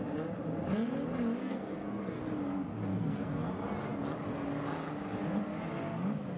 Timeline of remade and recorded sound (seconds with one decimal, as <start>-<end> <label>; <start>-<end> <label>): 0.0-1.4 recorded; 1.4-2.2 remade; 2.2-2.9 recorded; 2.9-3.5 remade; 3.5-6.4 recorded